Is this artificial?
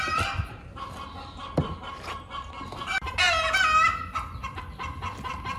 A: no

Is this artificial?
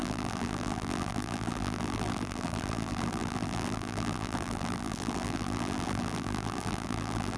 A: yes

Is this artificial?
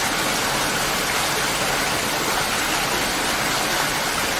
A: no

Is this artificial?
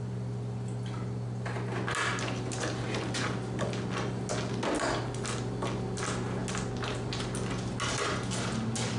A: no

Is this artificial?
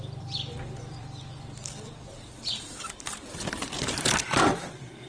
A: yes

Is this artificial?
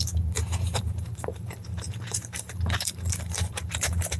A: yes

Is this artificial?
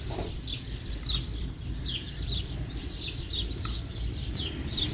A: yes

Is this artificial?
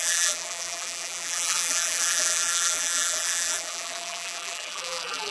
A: yes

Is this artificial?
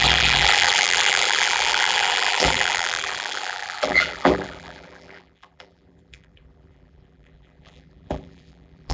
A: yes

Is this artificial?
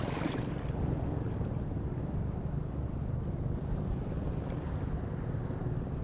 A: no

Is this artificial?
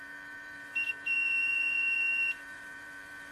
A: yes